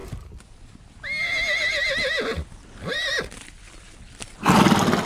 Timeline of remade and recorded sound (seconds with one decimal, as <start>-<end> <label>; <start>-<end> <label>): 0.0-5.1 recorded